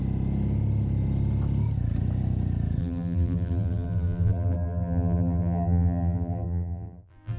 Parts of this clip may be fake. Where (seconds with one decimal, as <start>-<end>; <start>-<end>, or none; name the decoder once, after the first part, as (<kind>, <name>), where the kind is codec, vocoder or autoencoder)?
2.8-7.4 (vocoder, BigVGAN v2)